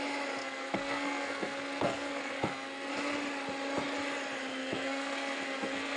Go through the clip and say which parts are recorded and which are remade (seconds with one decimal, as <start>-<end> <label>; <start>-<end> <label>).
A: 0.0-0.4 recorded; 0.4-2.9 remade; 2.9-4.6 recorded; 4.6-6.0 remade

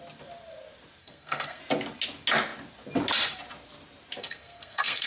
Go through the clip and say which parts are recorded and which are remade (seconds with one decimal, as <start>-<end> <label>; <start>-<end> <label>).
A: 0.0-1.0 recorded; 1.0-1.6 remade; 1.6-4.2 recorded; 4.2-5.1 remade

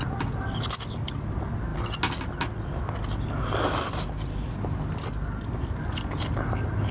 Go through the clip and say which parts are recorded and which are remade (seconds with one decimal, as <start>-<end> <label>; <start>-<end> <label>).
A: 0.0-6.9 recorded

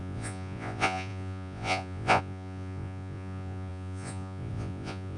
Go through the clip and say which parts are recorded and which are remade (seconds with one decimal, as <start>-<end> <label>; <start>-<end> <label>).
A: 0.0-5.2 remade

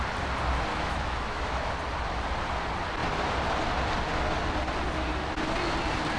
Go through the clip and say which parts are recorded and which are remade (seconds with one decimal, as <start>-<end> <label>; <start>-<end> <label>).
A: 0.0-0.7 recorded; 0.7-1.7 remade; 1.7-6.2 recorded

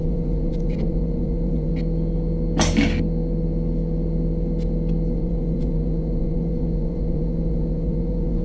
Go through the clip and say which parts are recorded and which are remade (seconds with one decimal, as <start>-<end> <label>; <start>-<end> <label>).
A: 0.0-1.7 remade; 1.7-5.1 recorded; 5.1-8.4 remade